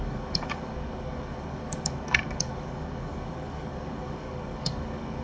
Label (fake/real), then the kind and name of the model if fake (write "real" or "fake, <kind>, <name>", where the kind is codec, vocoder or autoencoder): fake, codec, DAC